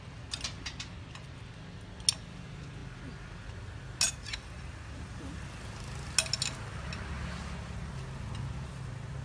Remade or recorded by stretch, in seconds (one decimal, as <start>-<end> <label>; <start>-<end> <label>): 0.0-9.2 recorded